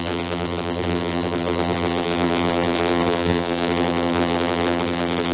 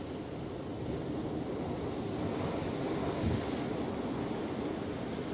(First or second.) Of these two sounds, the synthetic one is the first